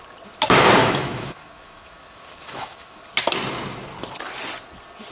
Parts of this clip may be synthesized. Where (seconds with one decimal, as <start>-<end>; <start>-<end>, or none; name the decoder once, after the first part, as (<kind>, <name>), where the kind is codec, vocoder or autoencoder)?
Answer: 0.8-3.0 (autoencoder, DAC-VAE)